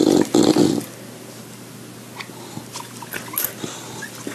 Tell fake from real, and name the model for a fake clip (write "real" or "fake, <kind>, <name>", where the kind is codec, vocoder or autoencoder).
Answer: real